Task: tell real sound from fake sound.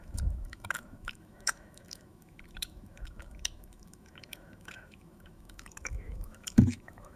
fake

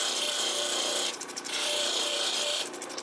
fake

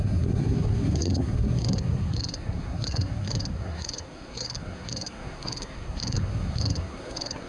fake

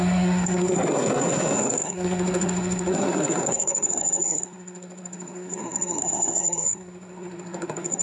fake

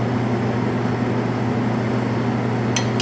real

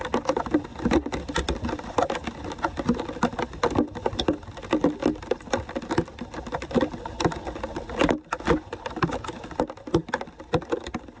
real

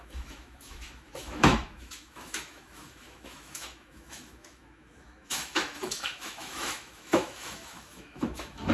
fake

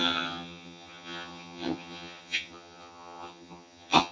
fake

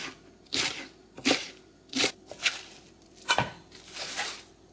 real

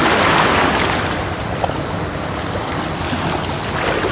real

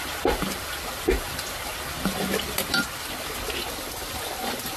fake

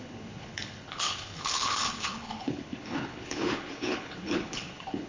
fake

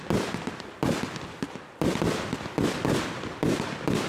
real